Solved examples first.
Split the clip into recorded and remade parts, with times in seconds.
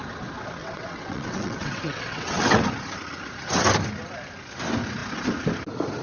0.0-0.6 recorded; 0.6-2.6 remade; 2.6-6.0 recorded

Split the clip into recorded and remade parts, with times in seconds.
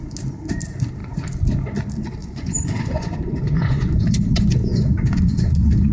0.0-2.2 recorded; 2.2-5.9 remade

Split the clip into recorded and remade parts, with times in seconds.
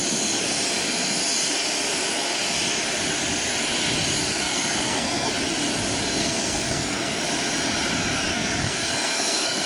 0.0-4.3 recorded; 4.3-5.3 remade; 5.3-6.2 recorded; 6.2-7.2 remade; 7.2-8.3 recorded; 8.3-9.7 remade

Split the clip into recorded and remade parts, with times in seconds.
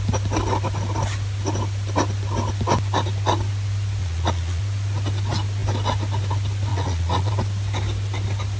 0.0-4.0 recorded; 4.0-4.6 remade; 4.6-6.7 recorded; 6.7-7.3 remade; 7.3-8.6 recorded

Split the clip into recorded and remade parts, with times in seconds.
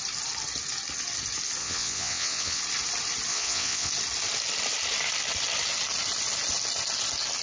0.0-1.6 recorded; 1.6-2.6 remade; 2.6-3.3 recorded; 3.3-3.9 remade; 3.9-7.4 recorded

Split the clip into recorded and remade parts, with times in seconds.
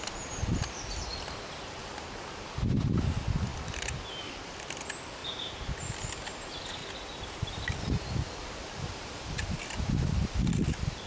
0.0-5.2 remade; 5.2-5.7 recorded; 5.7-6.8 remade; 6.8-7.5 recorded; 7.5-11.1 remade